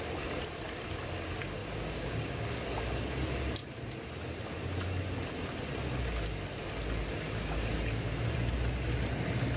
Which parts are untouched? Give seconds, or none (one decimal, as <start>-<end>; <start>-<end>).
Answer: 0.0-1.6; 2.8-9.6